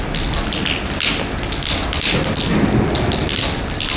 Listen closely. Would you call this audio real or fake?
real